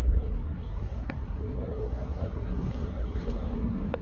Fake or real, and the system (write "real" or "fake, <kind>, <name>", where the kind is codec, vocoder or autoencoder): fake, codec, SNAC